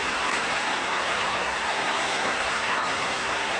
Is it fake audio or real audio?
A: fake